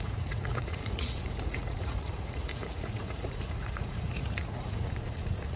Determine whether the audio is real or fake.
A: fake